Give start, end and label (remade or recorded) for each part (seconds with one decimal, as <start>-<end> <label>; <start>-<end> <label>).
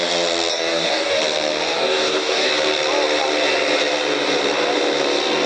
0.0-0.5 recorded; 0.5-1.2 remade; 1.2-1.7 recorded; 1.7-2.5 remade; 2.5-5.5 recorded